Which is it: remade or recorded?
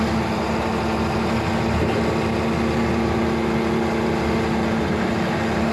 recorded